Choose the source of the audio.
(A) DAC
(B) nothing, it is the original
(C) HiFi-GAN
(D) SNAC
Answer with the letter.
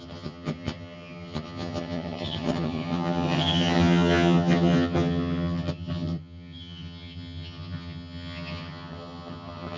C